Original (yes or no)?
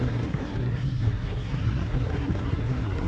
no